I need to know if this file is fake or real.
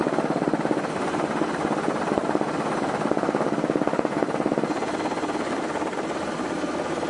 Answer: real